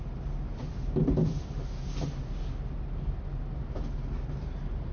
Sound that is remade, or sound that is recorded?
recorded